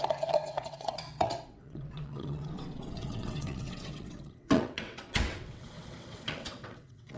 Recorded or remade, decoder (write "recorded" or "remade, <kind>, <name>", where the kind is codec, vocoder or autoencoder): remade, vocoder, WaveNeXt